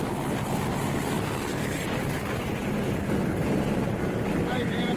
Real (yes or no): yes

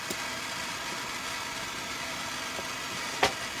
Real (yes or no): yes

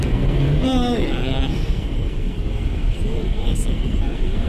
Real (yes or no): no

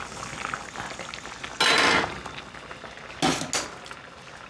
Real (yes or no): yes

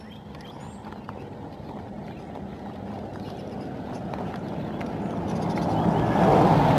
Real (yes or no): yes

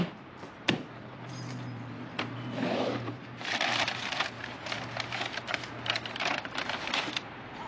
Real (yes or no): no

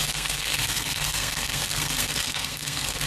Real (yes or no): no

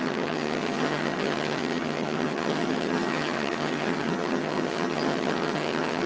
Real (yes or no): no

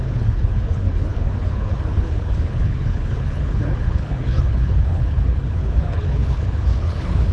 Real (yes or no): no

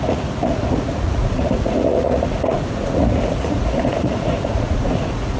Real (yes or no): no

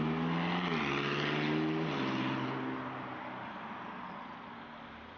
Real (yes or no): yes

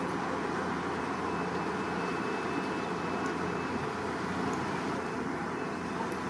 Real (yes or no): no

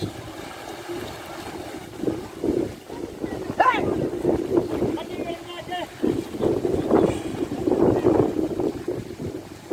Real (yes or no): yes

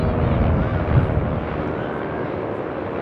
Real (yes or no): yes